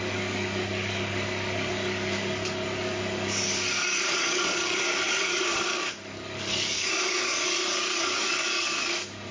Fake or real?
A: fake